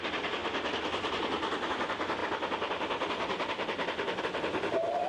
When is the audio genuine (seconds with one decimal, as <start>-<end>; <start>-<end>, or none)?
0.0-5.1